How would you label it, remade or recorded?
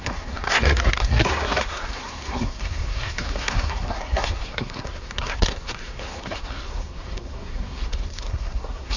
remade